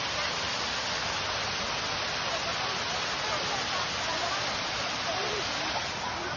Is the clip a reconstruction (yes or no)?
no